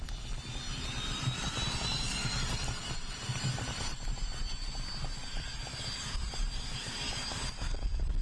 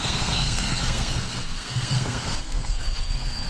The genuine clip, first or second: first